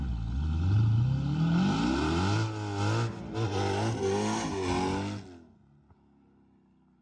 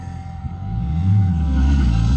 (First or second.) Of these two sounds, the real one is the first